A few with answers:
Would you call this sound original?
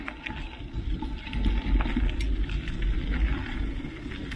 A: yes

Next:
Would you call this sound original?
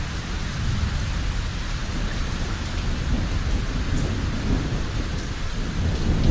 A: yes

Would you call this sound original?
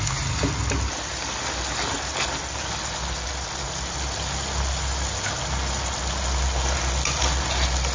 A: yes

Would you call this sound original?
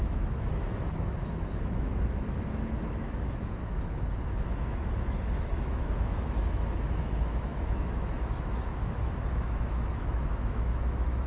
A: no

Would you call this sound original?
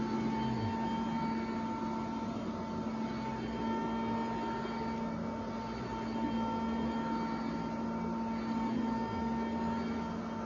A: yes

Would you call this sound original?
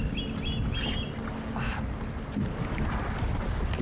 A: yes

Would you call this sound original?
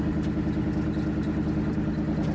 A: yes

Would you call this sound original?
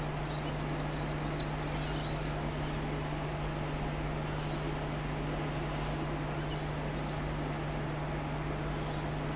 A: yes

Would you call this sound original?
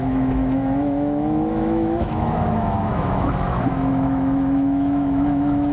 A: no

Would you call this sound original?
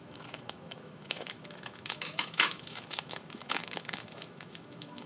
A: no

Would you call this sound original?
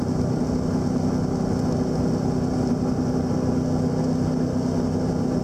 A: yes